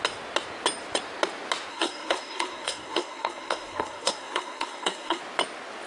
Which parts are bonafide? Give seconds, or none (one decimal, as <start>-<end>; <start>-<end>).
0.0-1.7; 5.2-5.9